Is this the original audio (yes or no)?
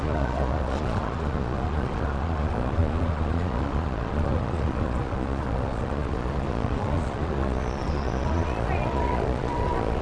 no